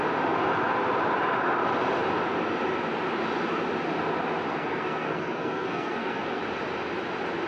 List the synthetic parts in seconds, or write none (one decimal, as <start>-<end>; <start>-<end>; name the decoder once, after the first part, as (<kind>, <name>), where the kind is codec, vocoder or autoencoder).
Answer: 4.5-6.4 (codec, SNAC)